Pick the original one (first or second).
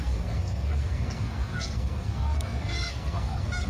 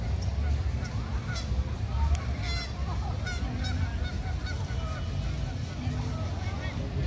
second